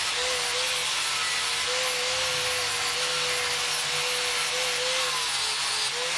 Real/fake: real